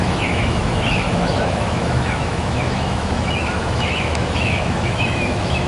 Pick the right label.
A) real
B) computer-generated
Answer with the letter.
B